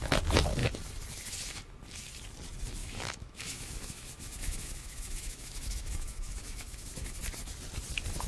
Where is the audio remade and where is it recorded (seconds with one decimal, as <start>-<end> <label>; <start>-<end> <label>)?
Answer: 0.0-2.8 recorded; 2.8-7.2 remade; 7.2-8.3 recorded